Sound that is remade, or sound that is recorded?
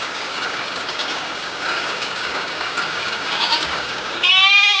remade